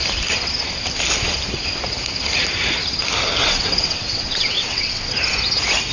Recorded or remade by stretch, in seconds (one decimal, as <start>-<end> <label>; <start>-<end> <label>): 0.0-3.4 recorded; 3.4-5.1 remade; 5.1-5.9 recorded